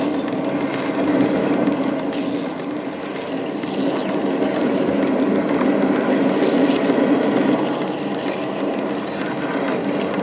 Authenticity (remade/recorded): recorded